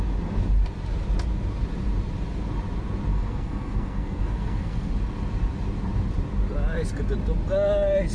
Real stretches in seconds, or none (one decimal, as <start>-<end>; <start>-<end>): 0.0-3.1; 4.9-8.1